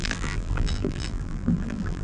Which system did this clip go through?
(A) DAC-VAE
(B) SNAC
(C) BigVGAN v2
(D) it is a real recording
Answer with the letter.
C